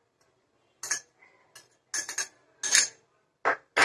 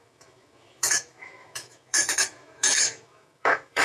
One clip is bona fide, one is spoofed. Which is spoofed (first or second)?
second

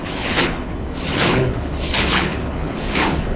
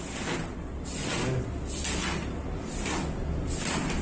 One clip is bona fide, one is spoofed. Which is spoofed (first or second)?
first